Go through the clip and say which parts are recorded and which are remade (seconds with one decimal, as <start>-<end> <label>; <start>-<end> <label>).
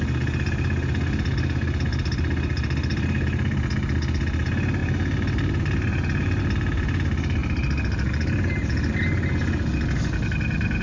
0.0-2.9 recorded; 2.9-3.6 remade; 3.6-4.8 recorded; 4.8-6.4 remade; 6.4-7.4 recorded; 7.4-8.9 remade; 8.9-10.8 recorded